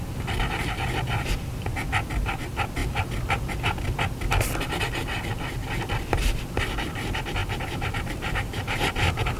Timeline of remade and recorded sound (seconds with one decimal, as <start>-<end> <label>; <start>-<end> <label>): 0.0-7.4 recorded; 7.4-9.4 remade